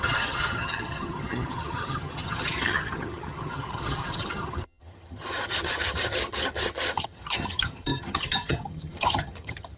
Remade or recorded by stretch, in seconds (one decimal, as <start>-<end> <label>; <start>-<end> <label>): 0.0-9.8 remade